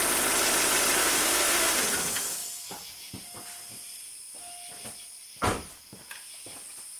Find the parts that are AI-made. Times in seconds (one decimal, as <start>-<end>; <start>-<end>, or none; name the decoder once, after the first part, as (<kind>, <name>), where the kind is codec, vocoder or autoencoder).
1.0-1.8 (autoencoder, DAC-VAE)